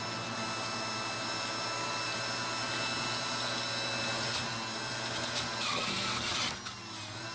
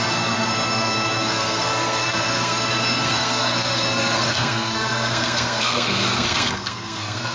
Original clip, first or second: first